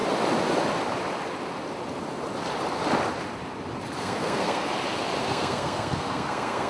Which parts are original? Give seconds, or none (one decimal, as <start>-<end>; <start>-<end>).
0.0-4.0; 4.7-5.2